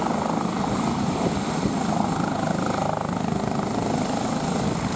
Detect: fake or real real